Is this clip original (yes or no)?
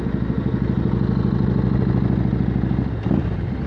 yes